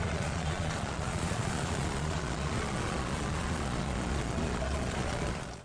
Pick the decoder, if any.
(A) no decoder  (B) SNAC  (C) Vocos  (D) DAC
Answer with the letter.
C